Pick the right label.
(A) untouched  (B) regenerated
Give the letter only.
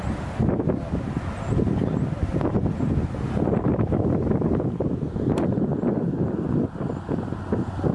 A